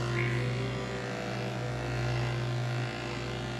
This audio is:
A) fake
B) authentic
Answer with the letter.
B